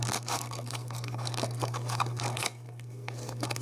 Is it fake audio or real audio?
fake